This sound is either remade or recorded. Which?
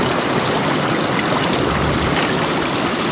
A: recorded